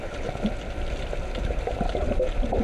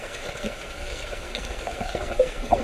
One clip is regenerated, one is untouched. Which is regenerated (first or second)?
second